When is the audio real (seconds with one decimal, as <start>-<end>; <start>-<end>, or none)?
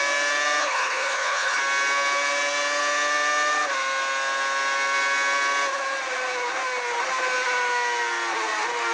0.0-0.6; 1.6-8.9